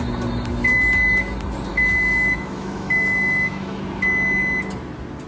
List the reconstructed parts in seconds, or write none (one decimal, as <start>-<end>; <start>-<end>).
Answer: 1.7-3.8